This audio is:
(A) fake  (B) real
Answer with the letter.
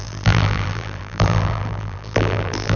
A